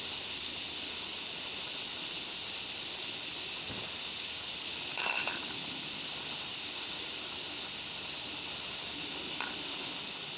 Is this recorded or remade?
recorded